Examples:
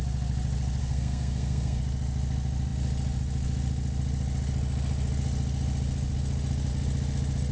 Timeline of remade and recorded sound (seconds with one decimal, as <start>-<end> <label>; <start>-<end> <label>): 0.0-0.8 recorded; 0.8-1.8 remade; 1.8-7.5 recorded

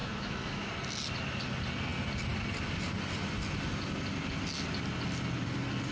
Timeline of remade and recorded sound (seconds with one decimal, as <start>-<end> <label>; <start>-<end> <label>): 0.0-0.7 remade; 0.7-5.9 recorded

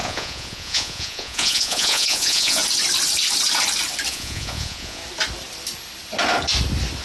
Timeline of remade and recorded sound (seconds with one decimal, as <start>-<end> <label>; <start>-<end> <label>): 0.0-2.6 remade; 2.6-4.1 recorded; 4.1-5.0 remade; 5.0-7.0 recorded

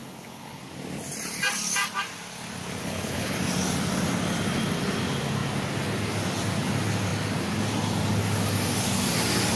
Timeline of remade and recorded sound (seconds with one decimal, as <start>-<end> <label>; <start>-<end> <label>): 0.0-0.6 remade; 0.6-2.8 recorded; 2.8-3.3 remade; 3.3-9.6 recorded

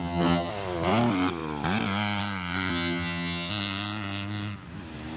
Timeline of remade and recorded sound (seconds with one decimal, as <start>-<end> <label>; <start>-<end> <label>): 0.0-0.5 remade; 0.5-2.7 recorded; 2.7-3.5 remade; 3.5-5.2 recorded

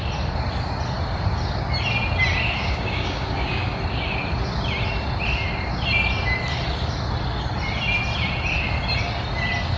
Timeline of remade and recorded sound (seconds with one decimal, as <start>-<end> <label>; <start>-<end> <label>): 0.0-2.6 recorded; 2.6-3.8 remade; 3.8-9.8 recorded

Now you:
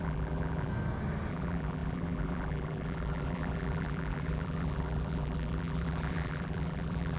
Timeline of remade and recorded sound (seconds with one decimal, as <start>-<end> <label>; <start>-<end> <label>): 0.0-0.7 remade; 0.7-1.3 recorded; 1.3-7.2 remade

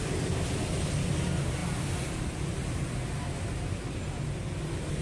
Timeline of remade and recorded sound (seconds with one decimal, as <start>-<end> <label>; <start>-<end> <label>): 0.0-5.0 recorded